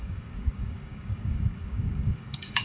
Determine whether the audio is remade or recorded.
remade